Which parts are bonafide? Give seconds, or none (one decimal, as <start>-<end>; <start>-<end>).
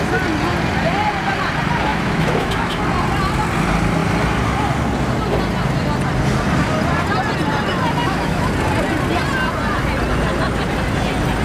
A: 0.0-1.9; 2.8-8.0; 8.5-11.4